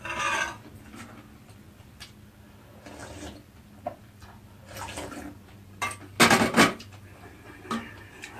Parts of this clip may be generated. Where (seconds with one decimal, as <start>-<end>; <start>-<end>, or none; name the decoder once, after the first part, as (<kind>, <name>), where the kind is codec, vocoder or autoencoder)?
none